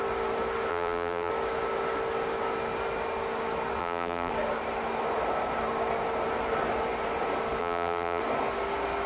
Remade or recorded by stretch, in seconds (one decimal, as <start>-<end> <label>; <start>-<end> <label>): 0.0-0.7 recorded; 0.7-1.3 remade; 1.3-3.8 recorded; 3.8-4.3 remade; 4.3-7.6 recorded; 7.6-8.2 remade; 8.2-9.1 recorded